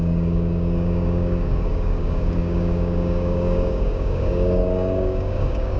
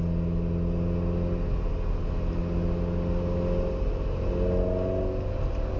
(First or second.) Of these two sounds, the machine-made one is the first